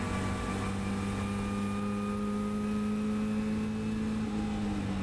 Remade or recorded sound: recorded